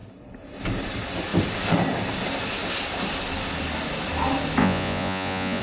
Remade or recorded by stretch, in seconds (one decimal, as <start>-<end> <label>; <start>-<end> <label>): 0.0-4.6 recorded; 4.6-5.6 remade